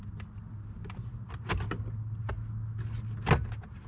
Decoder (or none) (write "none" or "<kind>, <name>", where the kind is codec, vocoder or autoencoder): none